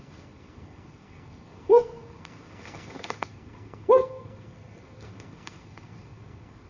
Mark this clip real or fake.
fake